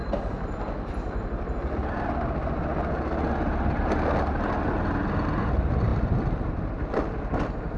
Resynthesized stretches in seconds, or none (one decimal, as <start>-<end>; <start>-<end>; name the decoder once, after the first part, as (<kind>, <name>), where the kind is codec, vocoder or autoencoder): none